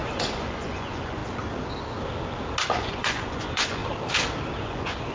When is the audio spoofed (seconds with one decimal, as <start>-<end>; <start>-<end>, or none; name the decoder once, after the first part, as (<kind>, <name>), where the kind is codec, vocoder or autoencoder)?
0.0-1.2 (vocoder, Vocos); 2.7-3.8; 4.6-5.1